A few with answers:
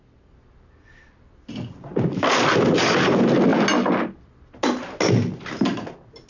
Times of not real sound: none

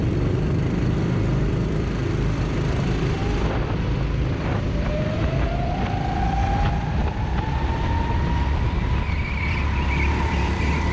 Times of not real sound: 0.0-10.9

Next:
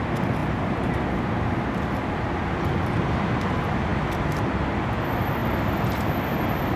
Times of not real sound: 0.4-0.9

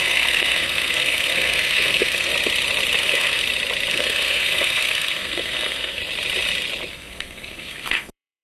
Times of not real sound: 0.0-2.3; 3.0-3.4; 3.9-6.0; 6.9-8.4

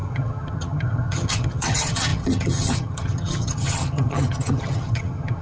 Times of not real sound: 0.0-5.4